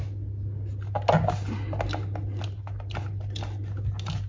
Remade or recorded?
recorded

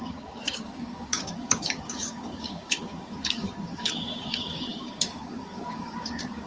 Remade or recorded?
remade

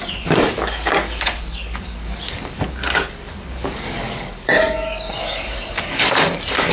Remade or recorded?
remade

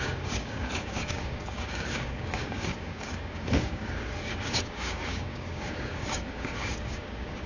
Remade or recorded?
remade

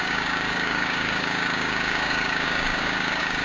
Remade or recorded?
remade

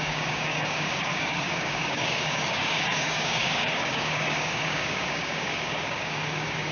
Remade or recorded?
remade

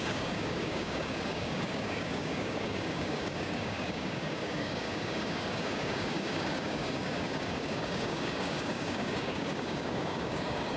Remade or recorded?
remade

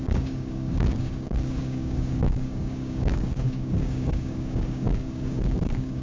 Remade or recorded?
remade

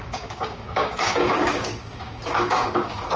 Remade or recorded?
remade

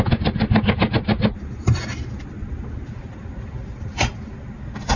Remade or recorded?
recorded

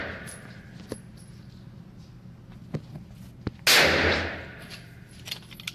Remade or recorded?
recorded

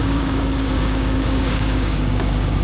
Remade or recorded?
remade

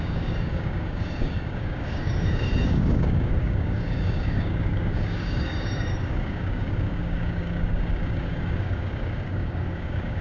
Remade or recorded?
remade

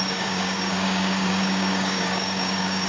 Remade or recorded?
remade